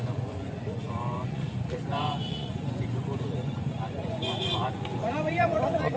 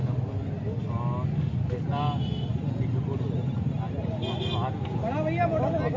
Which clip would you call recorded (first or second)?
second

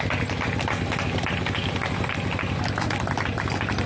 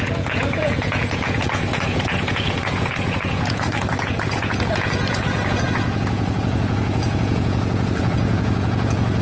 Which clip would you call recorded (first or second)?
first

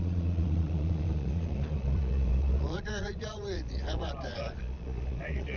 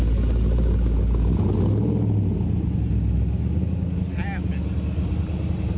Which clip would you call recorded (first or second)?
second